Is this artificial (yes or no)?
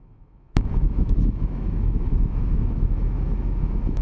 yes